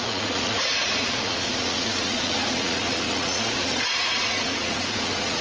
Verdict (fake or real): fake